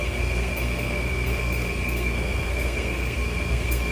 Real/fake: fake